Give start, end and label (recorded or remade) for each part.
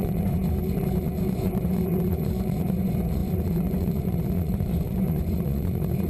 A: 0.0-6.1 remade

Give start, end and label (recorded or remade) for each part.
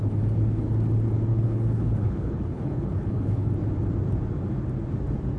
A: 0.0-0.7 remade; 0.7-1.3 recorded; 1.3-3.5 remade; 3.5-5.4 recorded